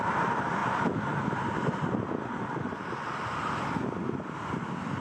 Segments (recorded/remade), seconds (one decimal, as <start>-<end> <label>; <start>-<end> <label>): 0.0-5.0 recorded